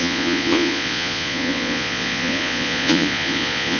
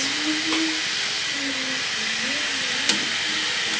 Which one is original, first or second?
second